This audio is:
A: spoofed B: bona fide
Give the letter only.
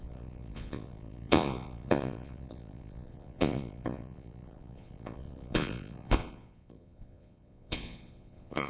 A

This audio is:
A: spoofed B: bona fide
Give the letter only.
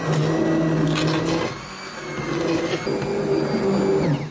B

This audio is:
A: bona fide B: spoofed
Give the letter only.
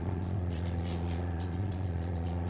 B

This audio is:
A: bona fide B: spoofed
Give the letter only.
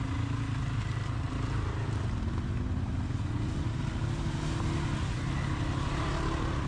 A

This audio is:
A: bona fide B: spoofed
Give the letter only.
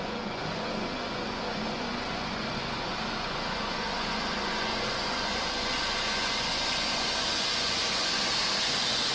B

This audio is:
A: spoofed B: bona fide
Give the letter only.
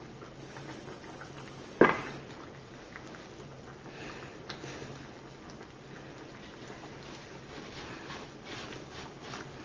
B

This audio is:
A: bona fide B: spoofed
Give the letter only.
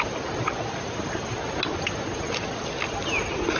A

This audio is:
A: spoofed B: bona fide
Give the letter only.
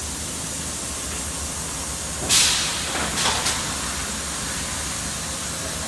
B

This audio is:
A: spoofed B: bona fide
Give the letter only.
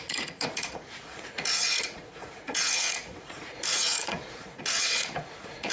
A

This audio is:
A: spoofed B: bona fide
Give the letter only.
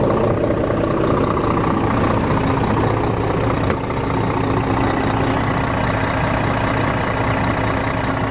B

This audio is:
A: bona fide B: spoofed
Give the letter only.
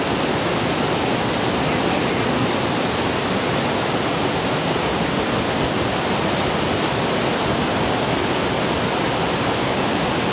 A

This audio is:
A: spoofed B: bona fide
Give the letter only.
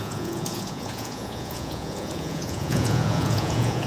A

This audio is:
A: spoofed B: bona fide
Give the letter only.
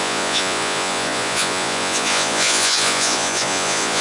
A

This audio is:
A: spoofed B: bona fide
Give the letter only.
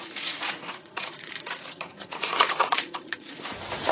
A